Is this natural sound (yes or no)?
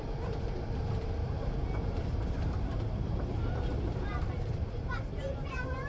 no